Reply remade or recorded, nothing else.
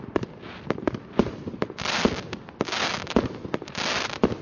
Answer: recorded